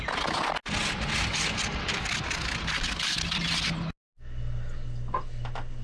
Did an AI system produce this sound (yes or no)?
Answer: no